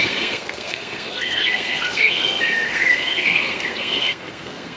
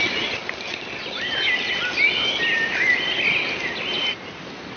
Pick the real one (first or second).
second